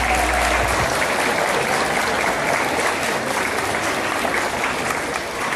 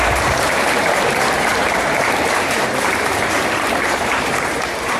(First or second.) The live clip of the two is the first